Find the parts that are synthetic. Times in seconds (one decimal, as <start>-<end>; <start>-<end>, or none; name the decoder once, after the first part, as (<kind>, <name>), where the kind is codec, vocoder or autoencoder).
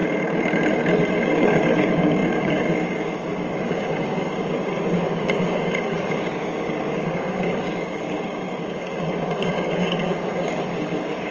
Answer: 1.1-11.3 (codec, DAC)